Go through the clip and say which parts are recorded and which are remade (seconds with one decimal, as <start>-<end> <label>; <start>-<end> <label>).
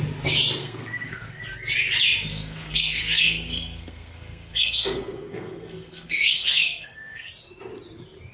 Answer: 0.0-0.6 recorded; 0.6-1.4 remade; 1.4-2.3 recorded; 2.3-7.3 remade; 7.3-8.3 recorded